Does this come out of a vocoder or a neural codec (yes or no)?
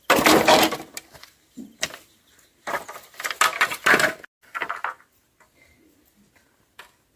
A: no